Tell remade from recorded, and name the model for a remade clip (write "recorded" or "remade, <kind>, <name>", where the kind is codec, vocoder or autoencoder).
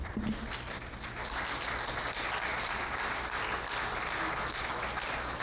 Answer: recorded